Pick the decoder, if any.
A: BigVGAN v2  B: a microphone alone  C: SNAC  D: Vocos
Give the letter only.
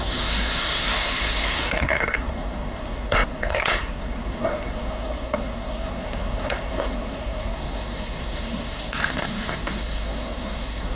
C